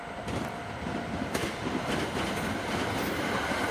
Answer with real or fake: real